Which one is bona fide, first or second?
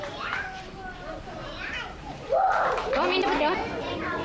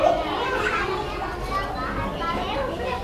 second